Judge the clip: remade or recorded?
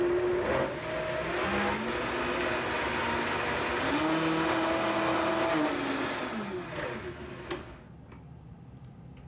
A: recorded